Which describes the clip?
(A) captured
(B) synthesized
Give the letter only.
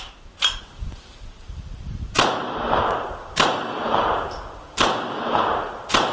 B